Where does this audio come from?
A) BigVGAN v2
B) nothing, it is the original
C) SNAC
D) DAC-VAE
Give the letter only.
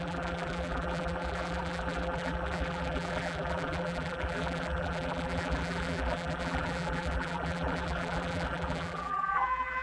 A